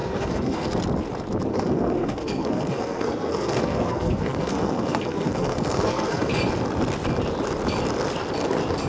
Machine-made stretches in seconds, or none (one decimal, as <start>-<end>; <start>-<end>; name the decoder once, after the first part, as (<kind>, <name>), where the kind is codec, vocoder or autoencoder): 0.0-0.7 (codec, SNAC); 1.5-6.3